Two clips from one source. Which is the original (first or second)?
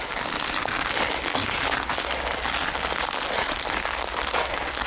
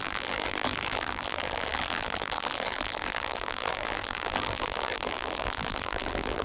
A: first